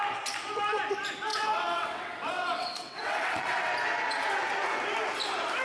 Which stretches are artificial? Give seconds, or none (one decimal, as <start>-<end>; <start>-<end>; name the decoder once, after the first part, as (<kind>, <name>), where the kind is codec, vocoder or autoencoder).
1.3-3.7 (vocoder, WaveNeXt)